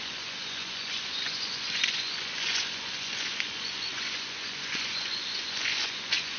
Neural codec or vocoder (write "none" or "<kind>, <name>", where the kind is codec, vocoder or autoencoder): vocoder, Vocos